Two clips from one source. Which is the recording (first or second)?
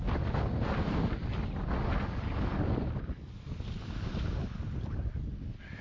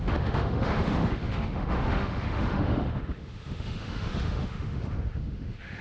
first